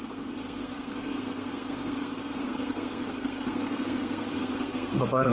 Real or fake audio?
fake